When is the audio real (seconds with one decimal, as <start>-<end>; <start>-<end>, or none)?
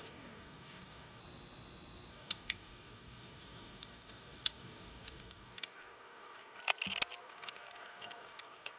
1.2-2.1; 6.6-7.2